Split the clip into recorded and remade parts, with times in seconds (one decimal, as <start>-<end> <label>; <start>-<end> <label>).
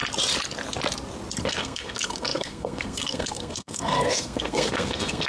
0.0-1.4 recorded; 1.4-5.3 remade